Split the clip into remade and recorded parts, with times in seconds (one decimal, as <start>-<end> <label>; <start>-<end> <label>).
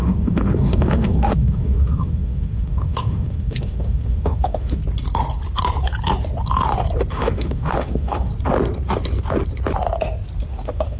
0.0-4.8 remade; 4.8-7.1 recorded; 7.1-8.3 remade; 8.3-10.5 recorded; 10.5-11.0 remade